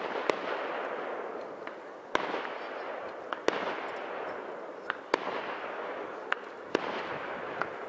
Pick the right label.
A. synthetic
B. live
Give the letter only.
B